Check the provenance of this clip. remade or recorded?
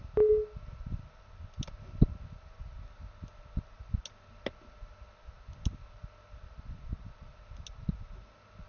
recorded